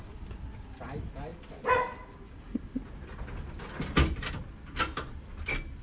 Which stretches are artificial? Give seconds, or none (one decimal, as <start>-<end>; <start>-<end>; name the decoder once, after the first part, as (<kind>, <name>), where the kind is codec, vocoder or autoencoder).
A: none